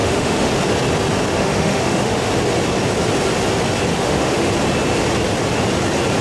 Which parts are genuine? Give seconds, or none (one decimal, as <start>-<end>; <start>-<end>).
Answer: 0.5-1.3; 2.3-3.9; 4.5-6.2

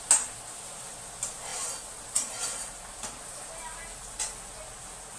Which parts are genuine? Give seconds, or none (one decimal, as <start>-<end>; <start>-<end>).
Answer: 0.0-5.2

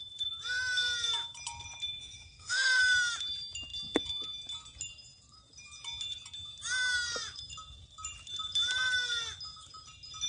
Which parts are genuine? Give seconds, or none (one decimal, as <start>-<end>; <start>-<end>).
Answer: 0.0-2.0; 2.8-10.3

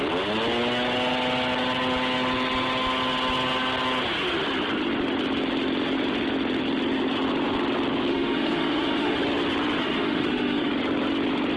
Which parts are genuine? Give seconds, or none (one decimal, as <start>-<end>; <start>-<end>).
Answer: 0.0-8.1; 9.2-9.8; 10.7-11.6

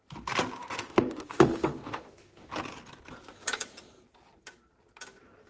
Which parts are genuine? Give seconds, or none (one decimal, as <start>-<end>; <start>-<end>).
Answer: 0.0-0.6; 2.5-5.5